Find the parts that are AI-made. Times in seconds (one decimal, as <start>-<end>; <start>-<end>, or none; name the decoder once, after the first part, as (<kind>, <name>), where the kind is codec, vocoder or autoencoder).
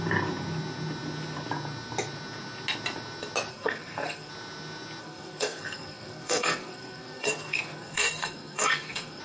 3.5-4.3 (codec, SNAC); 5.0-9.2